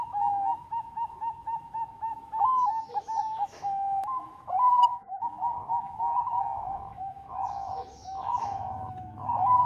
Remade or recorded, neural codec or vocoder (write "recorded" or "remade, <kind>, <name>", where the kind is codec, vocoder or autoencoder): remade, autoencoder, DAC-VAE